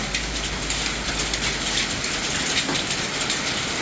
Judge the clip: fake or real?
real